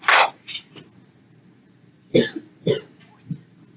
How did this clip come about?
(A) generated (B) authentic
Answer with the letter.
B